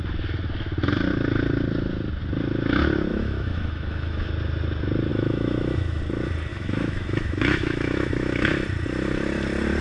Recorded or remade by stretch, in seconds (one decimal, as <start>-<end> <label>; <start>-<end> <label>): 0.0-3.1 recorded; 3.1-4.3 remade; 4.3-5.1 recorded; 5.1-6.0 remade; 6.0-6.5 recorded; 6.5-8.5 remade; 8.5-9.8 recorded